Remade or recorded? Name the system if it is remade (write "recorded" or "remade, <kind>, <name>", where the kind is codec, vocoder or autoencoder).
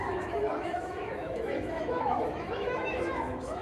remade, autoencoder, DAC-VAE